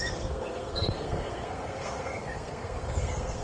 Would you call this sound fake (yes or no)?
yes